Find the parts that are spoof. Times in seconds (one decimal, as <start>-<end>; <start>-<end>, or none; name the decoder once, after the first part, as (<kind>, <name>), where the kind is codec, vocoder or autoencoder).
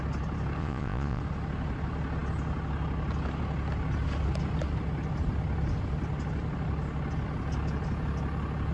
0.6-1.2 (vocoder, Vocos)